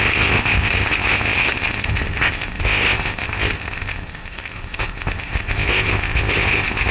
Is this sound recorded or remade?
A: remade